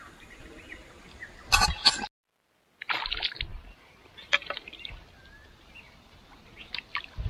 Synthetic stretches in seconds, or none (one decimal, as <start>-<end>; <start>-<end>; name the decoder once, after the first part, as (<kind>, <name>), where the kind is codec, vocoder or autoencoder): 3.5-4.1 (vocoder, BigVGAN v2)